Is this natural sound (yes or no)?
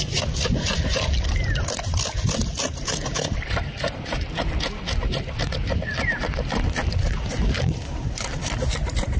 yes